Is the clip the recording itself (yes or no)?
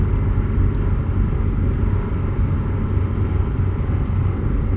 yes